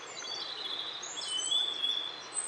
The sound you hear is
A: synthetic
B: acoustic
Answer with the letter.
B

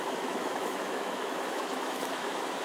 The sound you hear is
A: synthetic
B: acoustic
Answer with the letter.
A